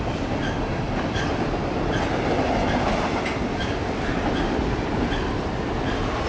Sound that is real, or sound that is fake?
real